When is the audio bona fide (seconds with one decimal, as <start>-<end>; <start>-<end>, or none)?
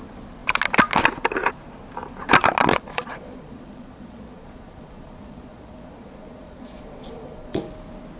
0.0-2.7; 7.6-8.2